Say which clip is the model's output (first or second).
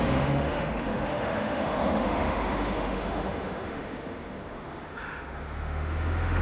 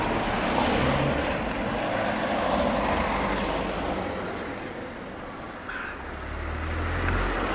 first